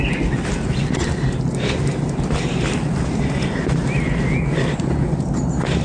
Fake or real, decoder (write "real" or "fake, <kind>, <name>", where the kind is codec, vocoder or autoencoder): real